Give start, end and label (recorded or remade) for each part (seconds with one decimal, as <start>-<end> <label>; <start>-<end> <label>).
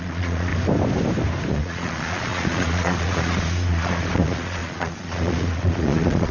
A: 0.0-0.5 remade; 0.5-1.5 recorded; 1.5-6.3 remade